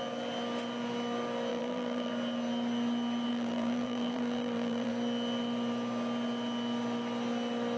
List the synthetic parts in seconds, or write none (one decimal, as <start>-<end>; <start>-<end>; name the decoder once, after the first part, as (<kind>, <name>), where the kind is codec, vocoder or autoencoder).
1.5-2.1 (vocoder, BigVGAN v2); 3.3-4.9